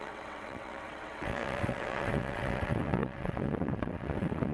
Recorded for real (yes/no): no